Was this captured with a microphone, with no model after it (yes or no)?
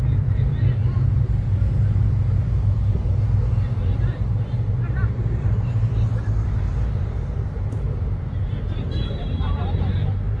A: no